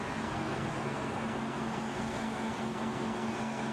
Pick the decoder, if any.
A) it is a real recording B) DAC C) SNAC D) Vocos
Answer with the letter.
C